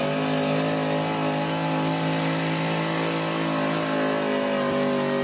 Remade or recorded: recorded